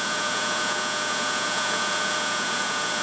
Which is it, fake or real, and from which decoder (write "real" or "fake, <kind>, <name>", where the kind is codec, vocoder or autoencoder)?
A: fake, vocoder, Vocos